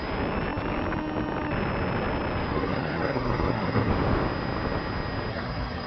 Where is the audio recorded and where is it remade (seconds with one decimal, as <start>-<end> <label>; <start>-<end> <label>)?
0.0-2.5 recorded; 2.5-3.9 remade; 3.9-5.3 recorded; 5.3-5.9 remade